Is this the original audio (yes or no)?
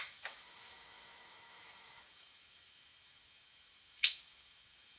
no